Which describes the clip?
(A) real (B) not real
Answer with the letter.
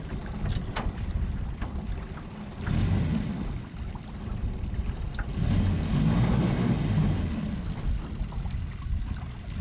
A